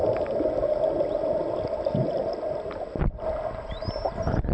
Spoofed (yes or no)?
no